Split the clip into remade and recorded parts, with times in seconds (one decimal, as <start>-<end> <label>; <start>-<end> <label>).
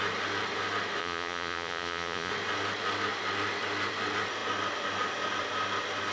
0.0-1.0 recorded; 1.0-2.3 remade; 2.3-6.1 recorded